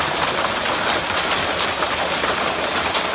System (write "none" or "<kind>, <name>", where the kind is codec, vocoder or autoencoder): none